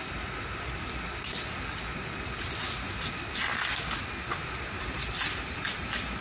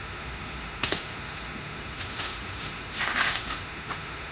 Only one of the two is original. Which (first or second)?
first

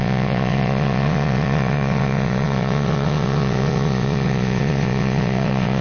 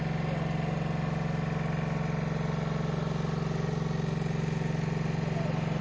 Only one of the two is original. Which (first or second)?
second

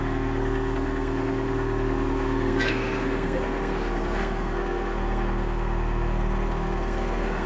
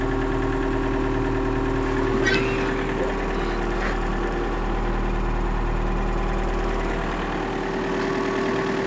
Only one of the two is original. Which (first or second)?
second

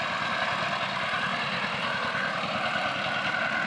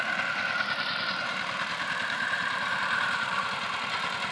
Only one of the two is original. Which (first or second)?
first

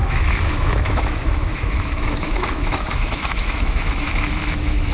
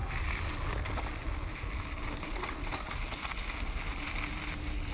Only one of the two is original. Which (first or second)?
second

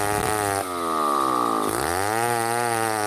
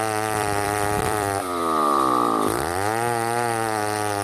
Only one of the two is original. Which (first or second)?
first